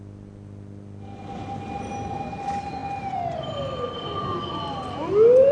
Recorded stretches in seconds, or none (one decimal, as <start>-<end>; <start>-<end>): 0.0-5.5